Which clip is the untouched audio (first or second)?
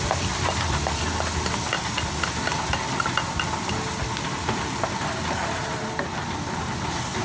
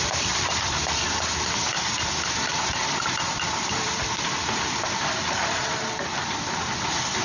first